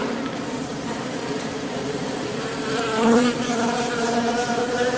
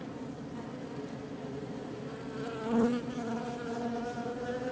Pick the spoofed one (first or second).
first